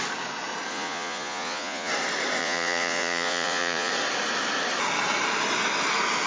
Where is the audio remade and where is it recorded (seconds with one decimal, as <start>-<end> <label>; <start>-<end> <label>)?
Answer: 0.0-0.7 recorded; 0.7-1.9 remade; 1.9-2.4 recorded; 2.4-3.9 remade; 3.9-6.3 recorded